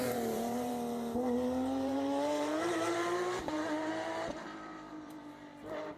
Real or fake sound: fake